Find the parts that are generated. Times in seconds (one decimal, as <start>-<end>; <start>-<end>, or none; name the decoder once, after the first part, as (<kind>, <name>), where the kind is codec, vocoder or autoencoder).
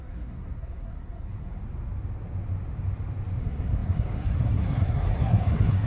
0.0-1.6 (codec, SNAC); 3.4-5.9